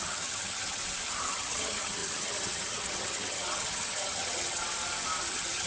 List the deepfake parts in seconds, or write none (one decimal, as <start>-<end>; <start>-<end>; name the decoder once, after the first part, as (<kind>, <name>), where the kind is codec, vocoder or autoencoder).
0.0-0.8 (vocoder, HiFi-GAN); 1.3-4.6; 5.2-5.7